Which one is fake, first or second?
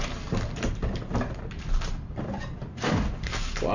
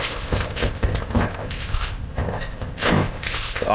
second